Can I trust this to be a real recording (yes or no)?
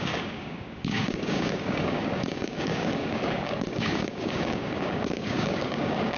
no